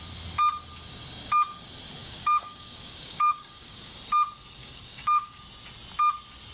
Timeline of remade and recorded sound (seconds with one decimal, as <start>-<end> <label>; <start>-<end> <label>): 0.0-2.0 recorded; 2.0-3.9 remade; 3.9-4.6 recorded; 4.6-5.4 remade; 5.4-6.5 recorded